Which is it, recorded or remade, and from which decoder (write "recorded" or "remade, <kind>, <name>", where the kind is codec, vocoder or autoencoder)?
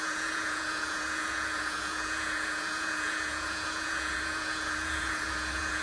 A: remade, vocoder, Vocos